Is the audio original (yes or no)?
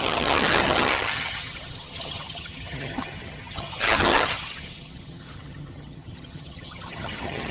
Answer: no